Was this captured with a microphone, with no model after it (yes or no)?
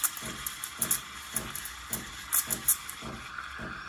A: yes